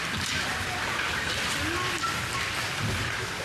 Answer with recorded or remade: recorded